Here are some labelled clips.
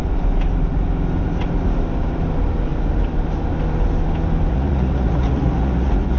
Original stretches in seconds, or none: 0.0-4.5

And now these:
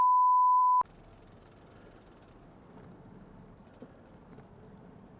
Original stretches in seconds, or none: 0.0-5.2